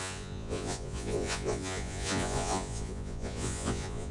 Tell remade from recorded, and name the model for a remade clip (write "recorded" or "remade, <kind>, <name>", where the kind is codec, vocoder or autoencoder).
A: remade, vocoder, Vocos